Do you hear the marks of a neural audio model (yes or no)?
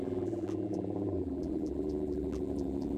yes